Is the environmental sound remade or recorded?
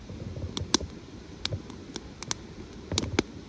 recorded